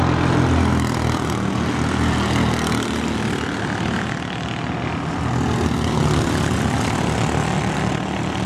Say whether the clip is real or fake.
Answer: real